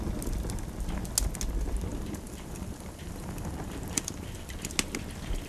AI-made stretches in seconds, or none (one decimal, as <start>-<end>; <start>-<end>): 1.9-4.7